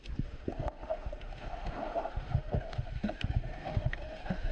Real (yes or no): no